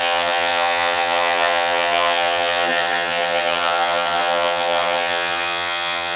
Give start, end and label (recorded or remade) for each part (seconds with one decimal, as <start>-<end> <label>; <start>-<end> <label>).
0.0-6.2 remade